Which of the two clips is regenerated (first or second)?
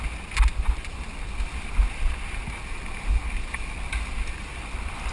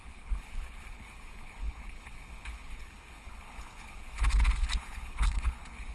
second